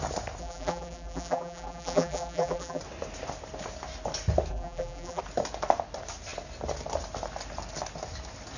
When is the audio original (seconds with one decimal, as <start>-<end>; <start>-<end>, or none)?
0.0-0.4; 2.8-4.5; 5.2-8.6